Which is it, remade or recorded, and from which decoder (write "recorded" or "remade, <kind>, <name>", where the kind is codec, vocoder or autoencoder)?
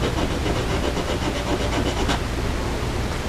recorded